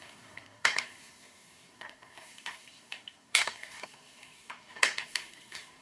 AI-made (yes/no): yes